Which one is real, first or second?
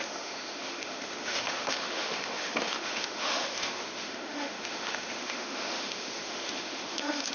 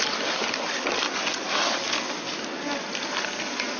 second